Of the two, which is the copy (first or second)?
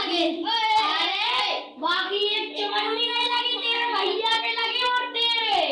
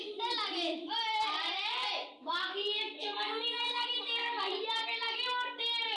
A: second